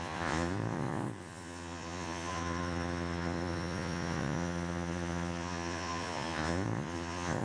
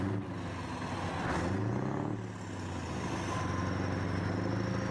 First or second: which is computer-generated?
first